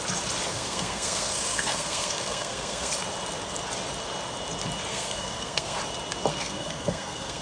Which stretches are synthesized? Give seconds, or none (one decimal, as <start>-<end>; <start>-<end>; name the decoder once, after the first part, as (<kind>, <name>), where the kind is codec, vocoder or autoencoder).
0.5-2.9 (codec, SNAC); 4.9-5.8; 6.3-7.4